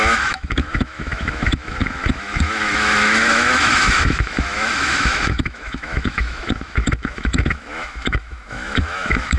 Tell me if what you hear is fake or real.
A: fake